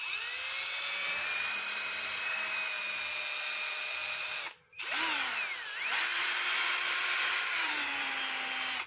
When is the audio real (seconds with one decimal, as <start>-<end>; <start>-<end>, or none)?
0.0-1.0; 3.0-6.1; 8.1-8.9